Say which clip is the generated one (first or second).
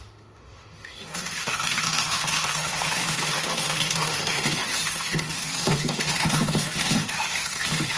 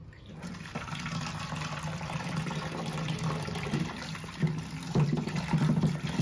first